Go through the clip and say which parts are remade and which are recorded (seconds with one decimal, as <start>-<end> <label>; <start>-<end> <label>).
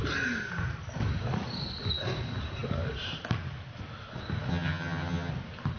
0.0-4.5 recorded; 4.5-5.3 remade; 5.3-5.8 recorded